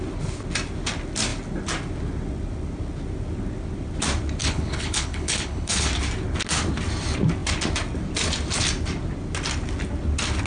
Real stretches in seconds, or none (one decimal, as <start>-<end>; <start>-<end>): 0.0-4.4; 5.9-10.5